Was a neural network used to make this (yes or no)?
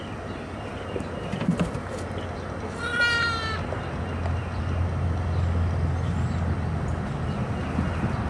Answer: no